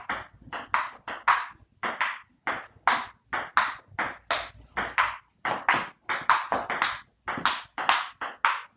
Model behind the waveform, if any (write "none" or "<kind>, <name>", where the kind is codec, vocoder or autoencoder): none